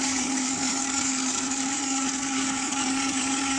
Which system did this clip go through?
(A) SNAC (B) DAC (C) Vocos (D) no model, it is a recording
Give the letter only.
B